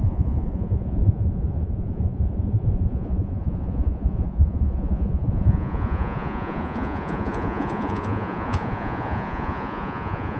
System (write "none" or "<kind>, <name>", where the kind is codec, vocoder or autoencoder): vocoder, Vocos